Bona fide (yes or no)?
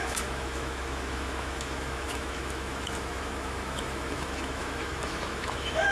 no